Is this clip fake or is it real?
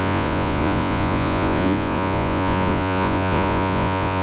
fake